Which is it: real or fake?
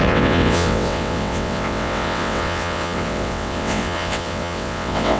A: fake